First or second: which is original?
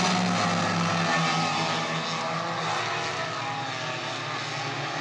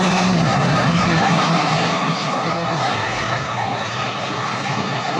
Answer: first